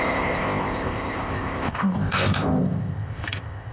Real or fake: fake